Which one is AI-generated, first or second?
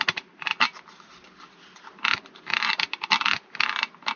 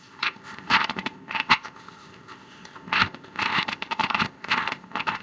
second